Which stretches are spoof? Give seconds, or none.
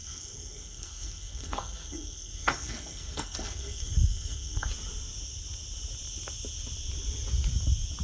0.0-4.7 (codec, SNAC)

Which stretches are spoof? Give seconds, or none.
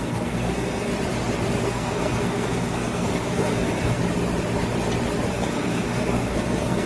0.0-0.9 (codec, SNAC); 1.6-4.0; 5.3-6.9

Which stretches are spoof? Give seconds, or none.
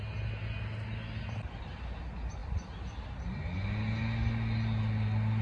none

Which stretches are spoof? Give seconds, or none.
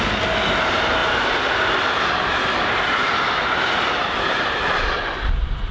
none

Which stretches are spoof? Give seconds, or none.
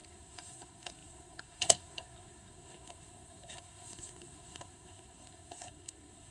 0.0-6.3 (codec, SNAC)